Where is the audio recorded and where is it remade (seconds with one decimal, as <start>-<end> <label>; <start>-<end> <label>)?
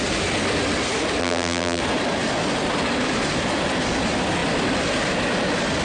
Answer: 0.0-1.2 recorded; 1.2-1.8 remade; 1.8-5.8 recorded